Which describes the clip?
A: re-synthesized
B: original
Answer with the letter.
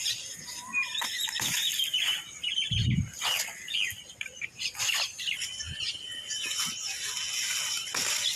B